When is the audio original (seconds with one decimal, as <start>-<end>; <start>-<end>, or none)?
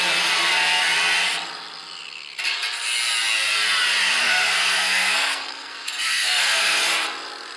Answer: 0.0-4.2; 6.8-7.6